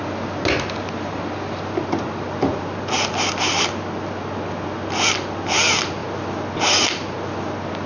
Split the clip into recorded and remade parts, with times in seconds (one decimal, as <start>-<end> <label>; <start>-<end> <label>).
0.0-7.9 recorded